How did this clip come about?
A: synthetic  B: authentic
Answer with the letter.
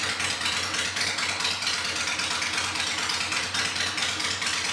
B